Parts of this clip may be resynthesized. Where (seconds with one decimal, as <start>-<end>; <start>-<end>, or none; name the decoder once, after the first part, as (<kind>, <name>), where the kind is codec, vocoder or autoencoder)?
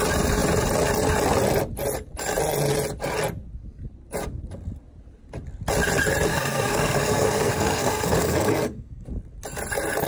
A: 6.3-9.1 (codec, SNAC)